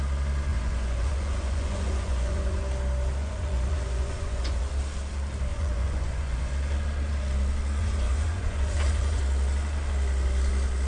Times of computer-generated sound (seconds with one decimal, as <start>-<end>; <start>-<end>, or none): 0.5-2.6; 3.2-4.6; 5.5-6.5; 7.8-9.2